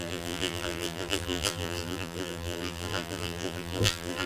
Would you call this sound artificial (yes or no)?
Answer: yes